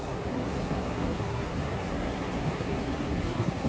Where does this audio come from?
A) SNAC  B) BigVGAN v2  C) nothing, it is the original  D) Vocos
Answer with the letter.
A